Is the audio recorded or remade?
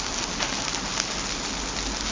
recorded